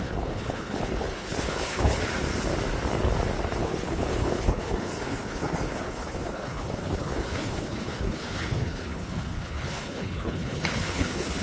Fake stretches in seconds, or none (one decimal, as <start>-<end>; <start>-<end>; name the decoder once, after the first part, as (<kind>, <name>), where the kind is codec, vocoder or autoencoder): 0.0-2.0 (codec, HILCodec); 3.6-11.4